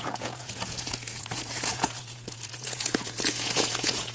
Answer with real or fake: fake